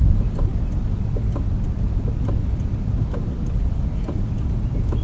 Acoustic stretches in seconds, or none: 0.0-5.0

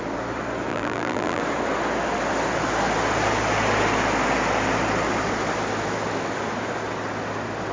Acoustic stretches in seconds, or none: 0.0-0.7; 1.4-7.7

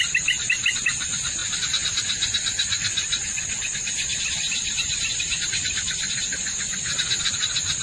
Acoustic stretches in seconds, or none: 0.0-7.8

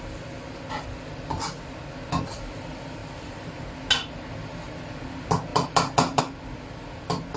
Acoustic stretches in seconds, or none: 0.0-3.0; 3.7-5.5; 6.2-7.4

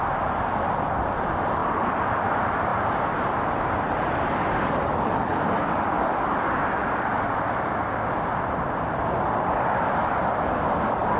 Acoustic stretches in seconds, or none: 1.6-2.2; 6.8-9.3

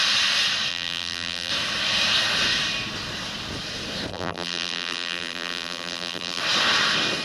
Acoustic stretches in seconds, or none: 0.0-0.7; 1.5-4.1; 6.4-7.2

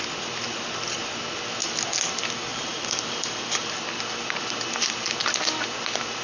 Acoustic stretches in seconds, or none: 0.0-2.5; 3.7-6.2